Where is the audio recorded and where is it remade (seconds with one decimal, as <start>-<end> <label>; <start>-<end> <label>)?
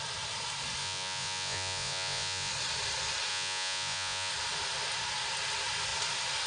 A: 0.0-0.8 recorded; 0.8-2.5 remade; 2.5-3.3 recorded; 3.3-4.3 remade; 4.3-6.5 recorded